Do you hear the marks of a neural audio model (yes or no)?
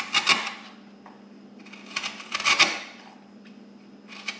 no